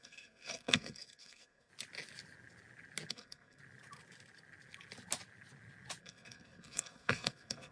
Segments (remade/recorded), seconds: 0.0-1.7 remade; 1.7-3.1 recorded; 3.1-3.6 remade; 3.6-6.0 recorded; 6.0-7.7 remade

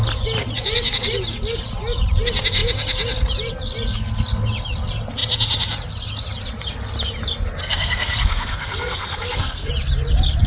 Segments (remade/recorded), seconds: 0.0-7.6 recorded; 7.6-9.7 remade; 9.7-10.5 recorded

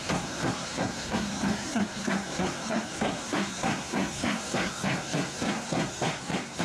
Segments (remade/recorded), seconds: 0.0-6.6 remade

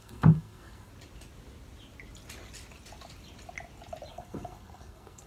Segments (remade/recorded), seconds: 0.0-0.9 remade; 0.9-4.1 recorded; 4.1-5.3 remade

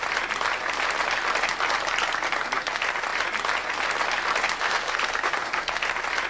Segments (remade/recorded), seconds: 0.0-4.6 recorded; 4.6-5.7 remade; 5.7-6.3 recorded

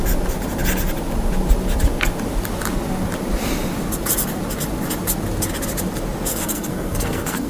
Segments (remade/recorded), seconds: 0.0-6.3 recorded; 6.3-7.5 remade

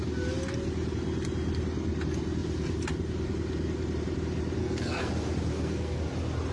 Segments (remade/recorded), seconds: 0.0-4.6 recorded; 4.6-5.1 remade; 5.1-5.5 recorded; 5.5-6.0 remade; 6.0-6.5 recorded